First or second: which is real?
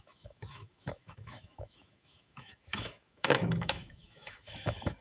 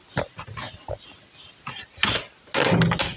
second